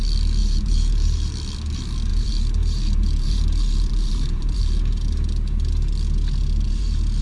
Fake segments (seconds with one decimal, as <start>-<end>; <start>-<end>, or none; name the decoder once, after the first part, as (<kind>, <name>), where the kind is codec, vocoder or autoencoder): 0.4-1.3 (vocoder, BigVGAN v2); 2.1-4.6; 6.4-7.2